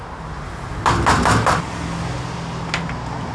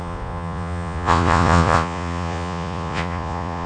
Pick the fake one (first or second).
second